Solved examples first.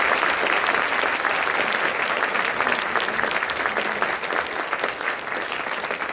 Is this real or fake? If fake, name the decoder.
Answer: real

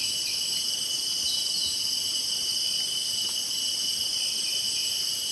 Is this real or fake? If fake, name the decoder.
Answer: real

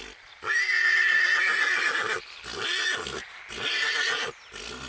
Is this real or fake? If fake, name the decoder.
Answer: real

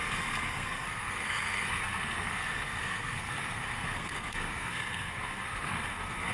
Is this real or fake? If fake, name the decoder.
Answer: fake, codec, SNAC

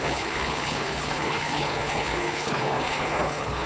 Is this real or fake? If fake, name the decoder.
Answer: fake, codec, HILCodec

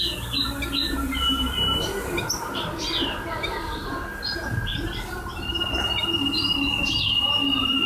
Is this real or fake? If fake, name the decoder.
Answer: real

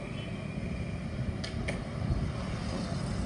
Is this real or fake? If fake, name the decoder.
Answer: real